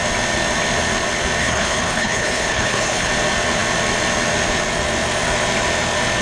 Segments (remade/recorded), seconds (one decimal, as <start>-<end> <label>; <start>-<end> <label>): 0.0-1.4 recorded; 1.4-3.1 remade; 3.1-6.2 recorded